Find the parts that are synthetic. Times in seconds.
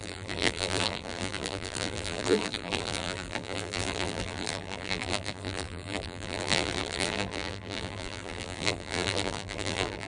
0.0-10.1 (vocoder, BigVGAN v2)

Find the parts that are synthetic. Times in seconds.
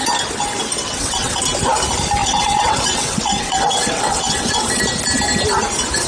0.8-1.4 (vocoder, WaveNeXt); 2.2-4.8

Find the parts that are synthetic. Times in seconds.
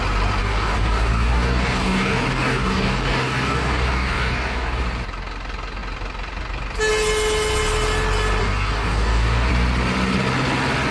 0.4-4.8 (codec, DAC); 8.4-9.5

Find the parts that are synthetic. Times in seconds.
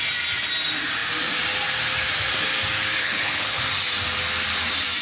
3.0-3.6 (codec, HILCodec)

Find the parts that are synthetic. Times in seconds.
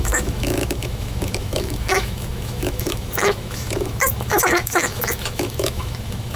0.0-6.4 (autoencoder, DAC-VAE)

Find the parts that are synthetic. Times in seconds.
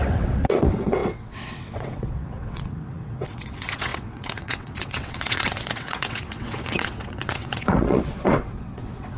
0.0-9.2 (vocoder, WaveNeXt)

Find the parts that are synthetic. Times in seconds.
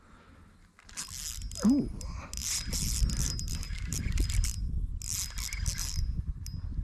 2.4-3.5 (vocoder, BigVGAN v2); 3.9-4.6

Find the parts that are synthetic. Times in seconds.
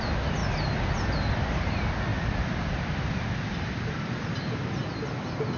none